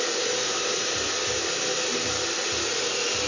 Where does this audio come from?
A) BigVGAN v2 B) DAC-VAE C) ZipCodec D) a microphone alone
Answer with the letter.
D